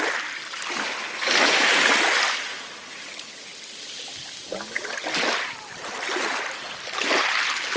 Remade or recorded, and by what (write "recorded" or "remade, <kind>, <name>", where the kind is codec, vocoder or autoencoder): recorded